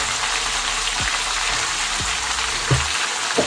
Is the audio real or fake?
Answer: real